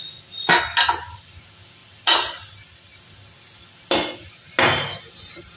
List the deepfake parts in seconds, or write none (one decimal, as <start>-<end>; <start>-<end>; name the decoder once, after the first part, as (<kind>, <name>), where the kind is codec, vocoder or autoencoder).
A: none